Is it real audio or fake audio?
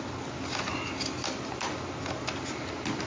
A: real